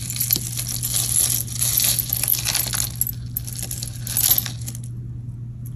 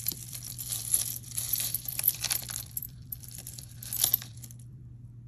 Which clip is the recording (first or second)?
first